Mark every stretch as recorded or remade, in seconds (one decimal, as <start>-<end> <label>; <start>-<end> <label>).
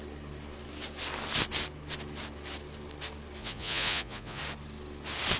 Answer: 0.0-3.4 recorded; 3.4-4.4 remade; 4.4-5.4 recorded